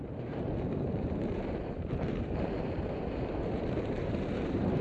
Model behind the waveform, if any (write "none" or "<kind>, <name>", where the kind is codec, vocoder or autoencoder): vocoder, BigVGAN v2